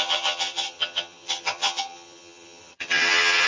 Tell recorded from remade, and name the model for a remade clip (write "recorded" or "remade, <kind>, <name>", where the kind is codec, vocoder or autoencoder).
remade, vocoder, HiFi-GAN